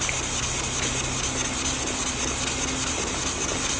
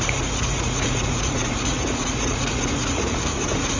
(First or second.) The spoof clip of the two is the second